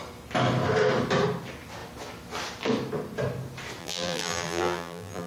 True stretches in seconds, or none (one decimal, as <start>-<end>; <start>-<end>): 0.0-3.8